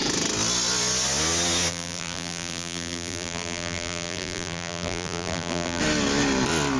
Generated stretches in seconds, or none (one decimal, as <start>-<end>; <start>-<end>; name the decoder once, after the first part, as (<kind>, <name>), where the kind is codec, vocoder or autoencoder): 1.7-5.8 (vocoder, BigVGAN v2)